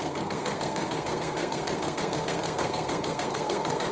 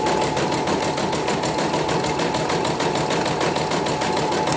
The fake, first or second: first